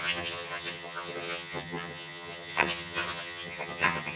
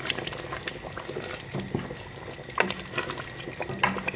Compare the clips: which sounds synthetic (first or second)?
first